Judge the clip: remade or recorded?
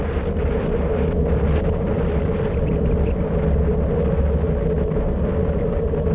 recorded